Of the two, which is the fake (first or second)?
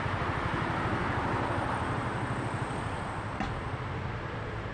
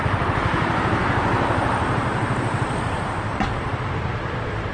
second